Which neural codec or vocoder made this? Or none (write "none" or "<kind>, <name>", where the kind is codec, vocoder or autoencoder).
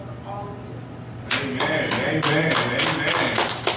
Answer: none